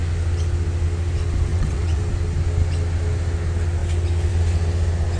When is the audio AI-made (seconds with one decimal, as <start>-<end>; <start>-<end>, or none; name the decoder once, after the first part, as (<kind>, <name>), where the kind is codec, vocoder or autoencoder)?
1.5-2.0 (vocoder, WaveNeXt)